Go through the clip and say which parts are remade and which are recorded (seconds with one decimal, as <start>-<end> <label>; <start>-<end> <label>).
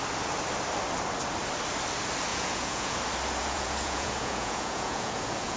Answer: 0.0-2.3 recorded; 2.3-3.0 remade; 3.0-3.4 recorded; 3.4-5.6 remade